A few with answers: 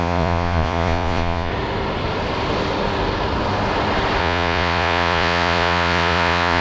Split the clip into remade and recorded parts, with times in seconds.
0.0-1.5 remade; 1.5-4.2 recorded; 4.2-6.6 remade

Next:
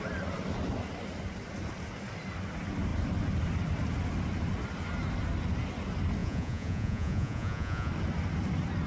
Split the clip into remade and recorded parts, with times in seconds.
0.0-6.2 recorded; 6.2-7.9 remade; 7.9-8.9 recorded

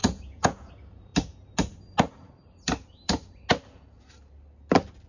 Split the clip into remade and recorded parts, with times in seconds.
0.0-0.7 remade; 0.7-5.1 recorded

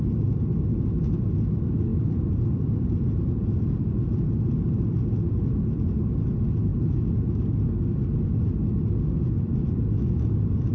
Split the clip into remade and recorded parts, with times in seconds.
0.0-10.7 recorded

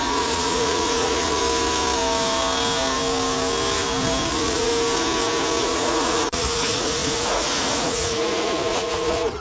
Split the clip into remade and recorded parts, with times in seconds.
0.0-1.4 remade; 1.4-4.3 recorded; 4.3-4.7 remade; 4.7-5.6 recorded; 5.6-9.4 remade

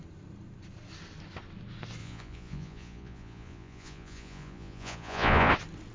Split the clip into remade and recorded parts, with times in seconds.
0.0-2.0 recorded; 2.0-5.5 remade; 5.5-5.9 recorded